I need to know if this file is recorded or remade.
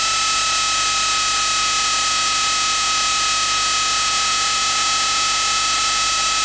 recorded